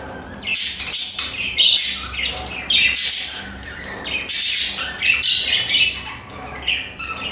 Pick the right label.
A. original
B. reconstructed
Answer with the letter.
A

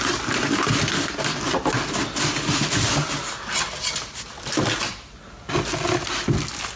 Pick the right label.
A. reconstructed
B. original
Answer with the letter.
B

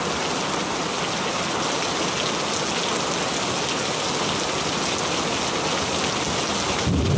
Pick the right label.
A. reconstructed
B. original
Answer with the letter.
B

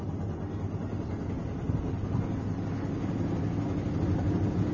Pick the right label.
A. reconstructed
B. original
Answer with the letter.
B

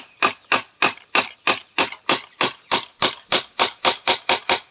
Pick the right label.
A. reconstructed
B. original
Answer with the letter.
B